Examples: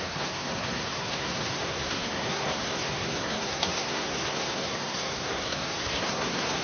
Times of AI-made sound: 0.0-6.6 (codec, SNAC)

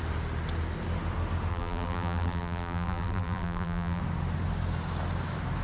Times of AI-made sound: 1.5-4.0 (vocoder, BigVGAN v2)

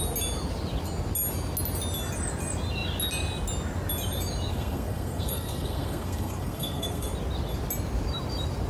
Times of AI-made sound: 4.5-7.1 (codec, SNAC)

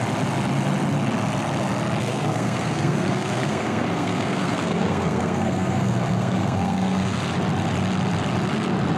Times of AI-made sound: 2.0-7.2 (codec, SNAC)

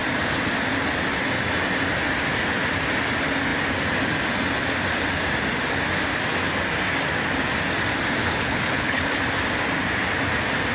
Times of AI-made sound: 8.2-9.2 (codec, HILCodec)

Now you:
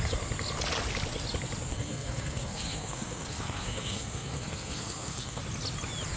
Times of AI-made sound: 1.7-5.4 (codec, SNAC)